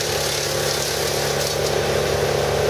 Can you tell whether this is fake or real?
real